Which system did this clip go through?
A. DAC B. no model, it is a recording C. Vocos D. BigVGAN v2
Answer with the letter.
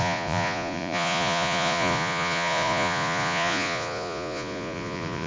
C